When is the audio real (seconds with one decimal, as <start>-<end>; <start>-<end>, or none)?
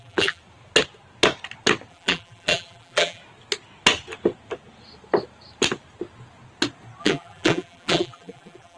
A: 0.4-1.9; 3.2-7.0